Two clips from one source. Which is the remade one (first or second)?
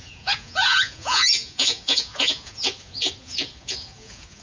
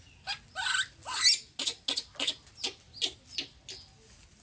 first